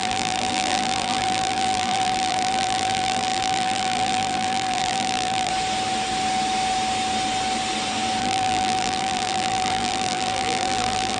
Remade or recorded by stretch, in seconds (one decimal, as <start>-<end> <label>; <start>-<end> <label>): 0.0-5.5 remade; 5.5-8.2 recorded; 8.2-11.2 remade